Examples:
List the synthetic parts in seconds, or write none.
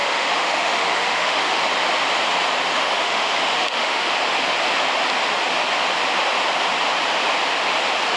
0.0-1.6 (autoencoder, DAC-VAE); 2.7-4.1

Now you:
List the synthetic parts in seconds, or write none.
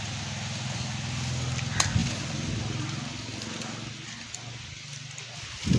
2.0-2.6 (vocoder, BigVGAN v2)